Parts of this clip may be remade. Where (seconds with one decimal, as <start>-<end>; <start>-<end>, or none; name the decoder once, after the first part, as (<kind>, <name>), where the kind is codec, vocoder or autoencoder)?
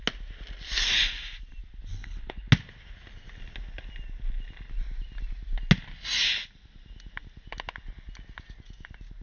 2.0-2.5 (codec, HILCodec)